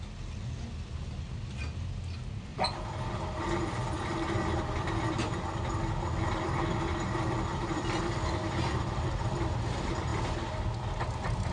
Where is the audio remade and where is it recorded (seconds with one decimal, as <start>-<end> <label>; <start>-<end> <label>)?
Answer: 0.0-2.5 recorded; 2.5-5.3 remade; 5.3-7.5 recorded; 7.5-9.5 remade; 9.5-11.5 recorded